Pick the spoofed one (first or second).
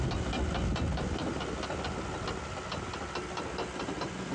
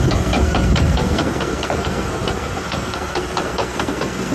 second